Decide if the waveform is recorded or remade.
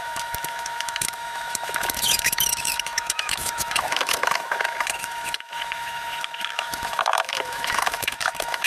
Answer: remade